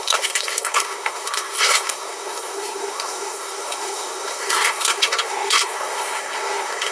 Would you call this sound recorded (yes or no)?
no